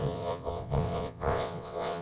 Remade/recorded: remade